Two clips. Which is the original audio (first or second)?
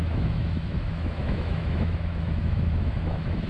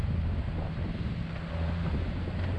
second